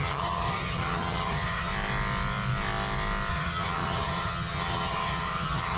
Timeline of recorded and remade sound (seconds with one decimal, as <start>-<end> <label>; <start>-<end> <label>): 0.0-1.7 remade; 1.7-3.3 recorded; 3.3-5.8 remade